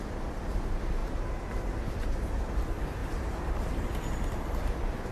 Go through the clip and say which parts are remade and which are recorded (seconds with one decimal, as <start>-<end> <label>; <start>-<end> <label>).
0.0-3.0 recorded; 3.0-3.7 remade; 3.7-5.1 recorded